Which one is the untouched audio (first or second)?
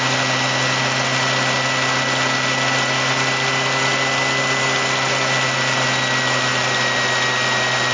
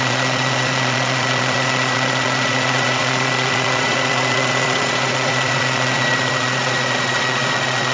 first